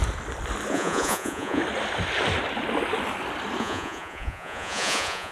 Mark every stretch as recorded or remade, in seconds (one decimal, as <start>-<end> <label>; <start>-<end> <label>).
0.0-0.7 recorded; 0.7-1.6 remade; 1.6-3.6 recorded; 3.6-5.3 remade